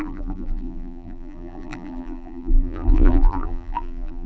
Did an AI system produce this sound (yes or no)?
yes